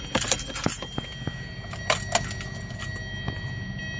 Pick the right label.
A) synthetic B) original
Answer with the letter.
B